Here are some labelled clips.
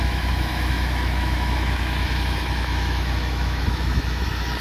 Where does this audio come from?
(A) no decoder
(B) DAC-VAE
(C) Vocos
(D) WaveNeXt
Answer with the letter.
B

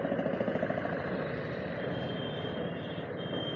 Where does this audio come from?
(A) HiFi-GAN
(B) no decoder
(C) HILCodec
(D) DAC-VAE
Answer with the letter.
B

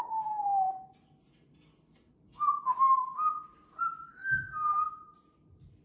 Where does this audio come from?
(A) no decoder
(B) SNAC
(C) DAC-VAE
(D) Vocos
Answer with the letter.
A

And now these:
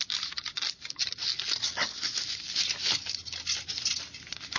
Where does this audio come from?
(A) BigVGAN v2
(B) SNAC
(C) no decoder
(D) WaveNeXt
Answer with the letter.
C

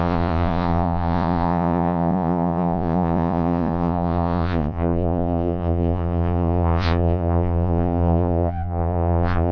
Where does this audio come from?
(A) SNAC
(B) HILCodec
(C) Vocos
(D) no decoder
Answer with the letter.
C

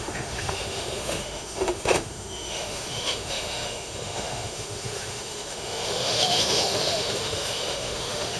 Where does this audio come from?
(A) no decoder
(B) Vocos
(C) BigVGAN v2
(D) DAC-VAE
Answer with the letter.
D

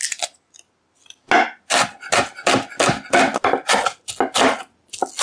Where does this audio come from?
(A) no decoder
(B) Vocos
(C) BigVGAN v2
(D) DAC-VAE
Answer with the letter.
A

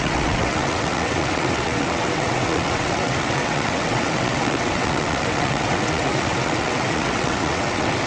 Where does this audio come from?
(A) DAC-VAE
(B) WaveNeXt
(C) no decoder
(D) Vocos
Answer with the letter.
B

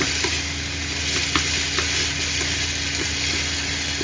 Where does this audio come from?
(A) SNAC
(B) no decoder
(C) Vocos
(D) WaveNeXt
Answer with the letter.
B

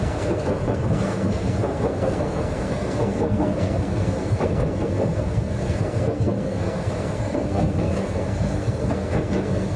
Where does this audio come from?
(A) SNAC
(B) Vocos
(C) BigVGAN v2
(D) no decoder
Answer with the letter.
A